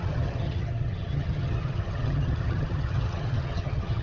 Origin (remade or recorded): remade